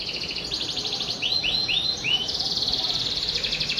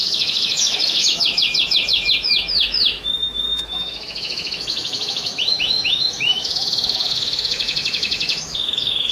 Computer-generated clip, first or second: second